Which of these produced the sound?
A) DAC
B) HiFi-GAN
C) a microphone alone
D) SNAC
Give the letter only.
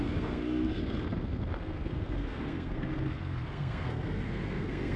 D